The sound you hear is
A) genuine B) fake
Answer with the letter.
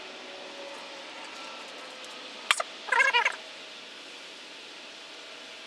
A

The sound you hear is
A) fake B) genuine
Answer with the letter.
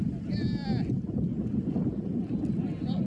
B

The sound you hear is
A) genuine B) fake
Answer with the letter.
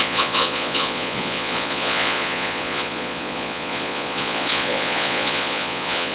B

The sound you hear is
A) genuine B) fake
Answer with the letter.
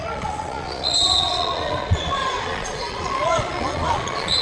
B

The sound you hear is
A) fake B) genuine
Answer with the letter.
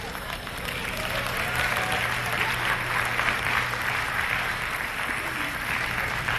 B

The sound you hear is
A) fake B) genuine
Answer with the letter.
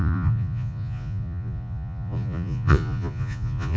A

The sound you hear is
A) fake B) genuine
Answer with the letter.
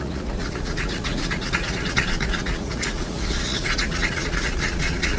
A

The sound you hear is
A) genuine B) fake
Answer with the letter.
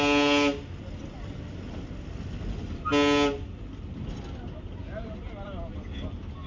A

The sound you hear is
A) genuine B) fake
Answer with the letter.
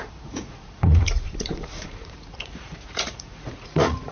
B